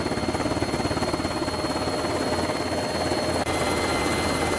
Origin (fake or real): real